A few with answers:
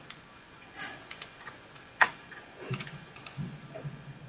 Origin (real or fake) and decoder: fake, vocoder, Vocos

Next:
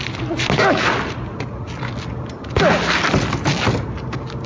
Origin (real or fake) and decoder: real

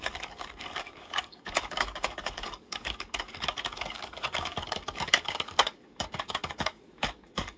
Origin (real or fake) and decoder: fake, codec, DAC